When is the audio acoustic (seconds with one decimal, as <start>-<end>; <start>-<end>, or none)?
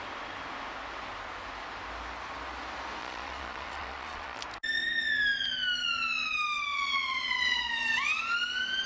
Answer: 0.0-3.0; 4.4-6.7; 7.7-8.9